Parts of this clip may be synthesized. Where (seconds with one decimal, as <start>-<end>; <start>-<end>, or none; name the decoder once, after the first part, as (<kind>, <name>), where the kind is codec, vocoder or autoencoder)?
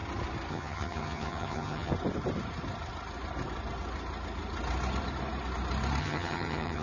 0.5-1.9 (vocoder, HiFi-GAN); 6.0-6.8